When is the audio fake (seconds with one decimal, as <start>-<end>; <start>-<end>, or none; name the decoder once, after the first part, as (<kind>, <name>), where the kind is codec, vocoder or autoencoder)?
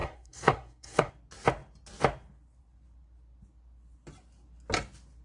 0.0-1.1 (codec, SNAC)